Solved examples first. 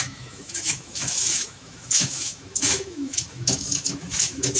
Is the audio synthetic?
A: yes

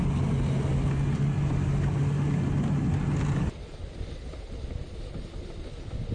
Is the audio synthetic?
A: no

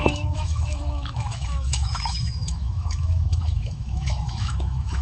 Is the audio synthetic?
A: yes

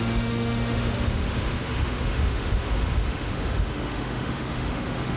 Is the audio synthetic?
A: yes